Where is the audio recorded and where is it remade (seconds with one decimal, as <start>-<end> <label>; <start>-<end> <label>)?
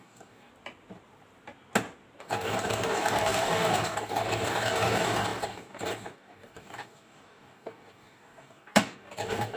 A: 0.0-0.5 remade; 0.5-2.2 recorded; 2.2-9.6 remade